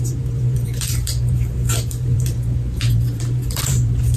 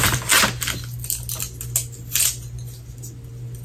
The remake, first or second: first